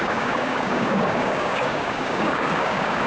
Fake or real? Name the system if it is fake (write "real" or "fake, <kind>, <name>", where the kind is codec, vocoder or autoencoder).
fake, codec, DAC